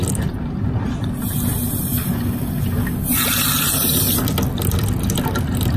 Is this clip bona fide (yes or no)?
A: yes